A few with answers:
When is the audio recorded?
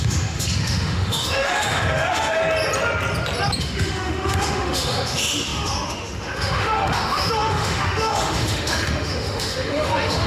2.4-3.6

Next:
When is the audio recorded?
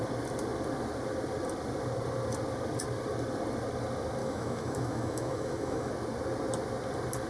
0.0-4.2; 5.9-7.3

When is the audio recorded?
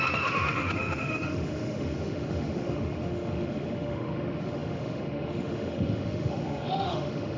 none